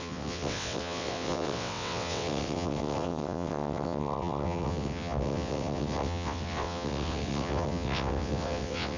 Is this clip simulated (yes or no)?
yes